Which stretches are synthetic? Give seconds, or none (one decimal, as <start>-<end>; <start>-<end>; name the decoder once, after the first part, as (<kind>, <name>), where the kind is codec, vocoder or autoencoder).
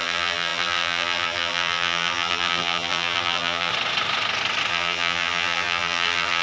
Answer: 0.0-3.7 (vocoder, BigVGAN v2); 4.7-6.4